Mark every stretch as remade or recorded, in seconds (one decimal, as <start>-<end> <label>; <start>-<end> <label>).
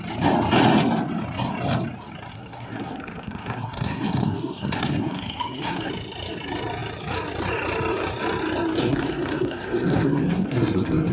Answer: 0.0-2.3 recorded; 2.3-5.9 remade; 5.9-8.8 recorded; 8.8-11.1 remade